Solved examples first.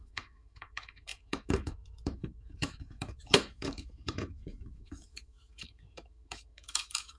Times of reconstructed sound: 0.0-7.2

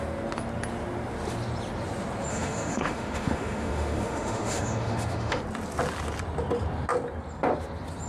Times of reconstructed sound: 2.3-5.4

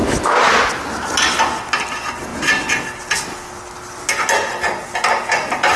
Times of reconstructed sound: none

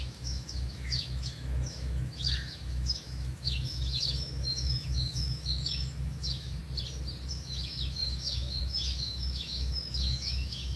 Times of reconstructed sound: 0.0-6.6; 7.3-10.8

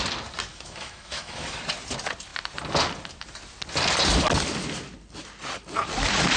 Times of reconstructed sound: 0.5-1.6

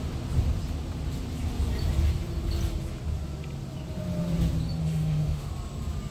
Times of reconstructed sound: 4.8-5.5